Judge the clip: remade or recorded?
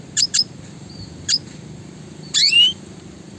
remade